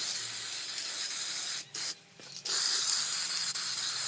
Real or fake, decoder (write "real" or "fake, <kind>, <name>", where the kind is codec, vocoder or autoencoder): real